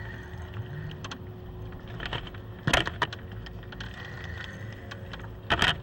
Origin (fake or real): real